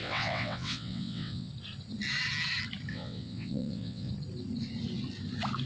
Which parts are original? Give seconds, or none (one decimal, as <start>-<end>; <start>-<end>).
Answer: 1.5-2.9; 4.1-5.7